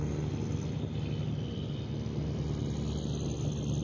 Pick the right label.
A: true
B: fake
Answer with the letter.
A